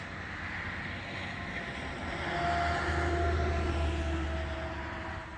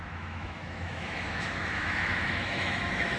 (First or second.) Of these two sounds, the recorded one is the first